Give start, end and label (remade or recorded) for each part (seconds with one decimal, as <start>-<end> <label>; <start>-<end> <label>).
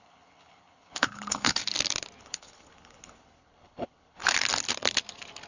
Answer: 0.0-1.6 remade; 1.6-2.2 recorded; 2.2-4.2 remade; 4.2-5.5 recorded